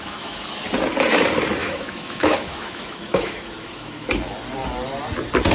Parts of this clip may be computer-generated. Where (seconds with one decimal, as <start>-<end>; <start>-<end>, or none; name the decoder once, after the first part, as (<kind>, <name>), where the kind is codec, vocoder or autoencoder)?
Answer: 0.0-0.5 (autoencoder, DAC-VAE); 1.6-4.1